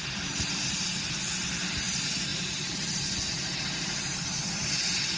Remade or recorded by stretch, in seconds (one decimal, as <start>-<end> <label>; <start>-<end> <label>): 0.0-5.2 recorded